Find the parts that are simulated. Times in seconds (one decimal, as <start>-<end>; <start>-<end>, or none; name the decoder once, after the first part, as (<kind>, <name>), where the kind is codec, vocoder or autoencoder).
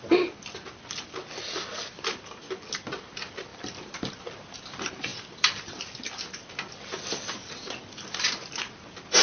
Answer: 3.5-4.1 (vocoder, BigVGAN v2); 5.1-8.7